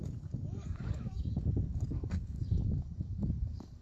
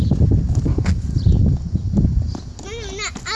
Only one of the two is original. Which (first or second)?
second